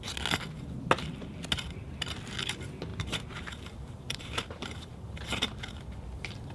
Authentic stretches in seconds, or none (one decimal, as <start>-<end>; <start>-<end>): 0.0-2.9; 5.5-6.5